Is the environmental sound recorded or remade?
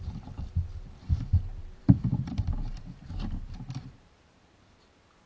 remade